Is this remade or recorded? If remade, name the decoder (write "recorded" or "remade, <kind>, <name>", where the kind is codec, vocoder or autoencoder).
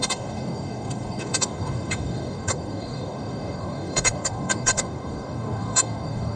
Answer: remade, codec, DAC